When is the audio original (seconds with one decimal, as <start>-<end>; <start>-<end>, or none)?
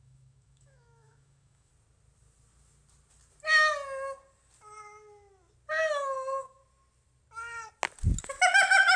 1.7-5.9; 6.6-8.2